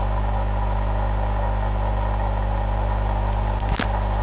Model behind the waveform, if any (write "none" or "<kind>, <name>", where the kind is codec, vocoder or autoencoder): none